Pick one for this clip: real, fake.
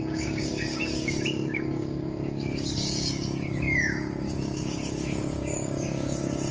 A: fake